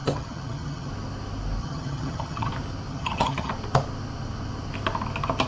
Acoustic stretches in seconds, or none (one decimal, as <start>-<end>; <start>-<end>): 0.9-1.6; 2.5-2.9; 3.5-5.5